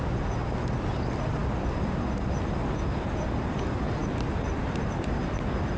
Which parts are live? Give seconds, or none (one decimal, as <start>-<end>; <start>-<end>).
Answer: 0.0-5.8